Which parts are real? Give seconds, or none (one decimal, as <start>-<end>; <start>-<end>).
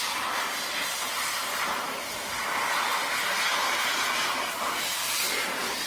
0.0-5.9